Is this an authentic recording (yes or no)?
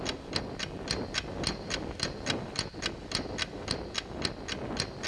yes